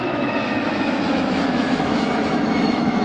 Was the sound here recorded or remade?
remade